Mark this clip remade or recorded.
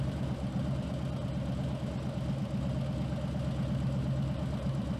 recorded